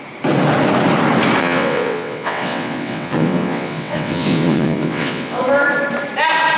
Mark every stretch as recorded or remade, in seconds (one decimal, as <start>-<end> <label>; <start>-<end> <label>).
0.0-1.4 recorded; 1.4-5.4 remade; 5.4-6.6 recorded